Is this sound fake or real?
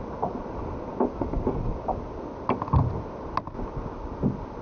real